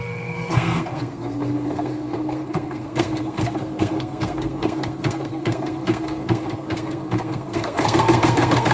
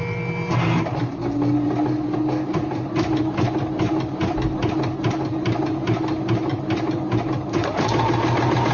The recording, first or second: second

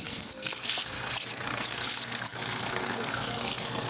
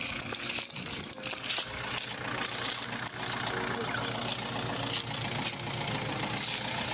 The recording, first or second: second